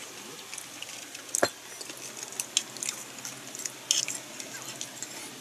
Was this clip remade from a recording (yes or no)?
no